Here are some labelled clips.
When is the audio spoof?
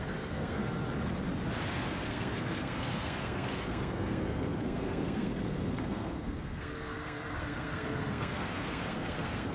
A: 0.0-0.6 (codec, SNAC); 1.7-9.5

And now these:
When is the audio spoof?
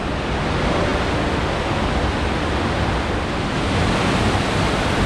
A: 0.0-0.9 (vocoder, BigVGAN v2); 4.0-5.1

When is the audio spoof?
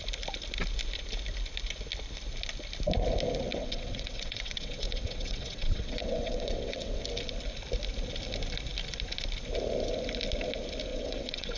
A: 3.5-7.0 (vocoder, WaveNeXt); 10.9-11.6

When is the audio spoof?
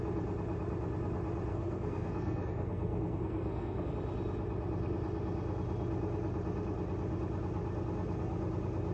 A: 1.5-3.9 (codec, SNAC)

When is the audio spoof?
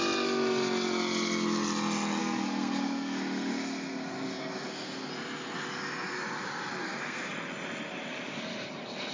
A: 2.2-5.1 (codec, SNAC); 6.8-7.3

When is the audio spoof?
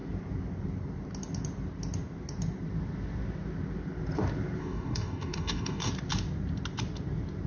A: 4.6-5.9 (codec, DAC)